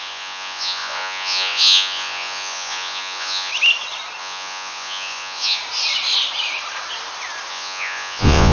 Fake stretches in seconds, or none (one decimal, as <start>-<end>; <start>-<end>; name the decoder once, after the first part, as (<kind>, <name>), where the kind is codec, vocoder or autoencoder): 0.0-3.5 (vocoder, Vocos); 4.2-5.6; 7.5-8.5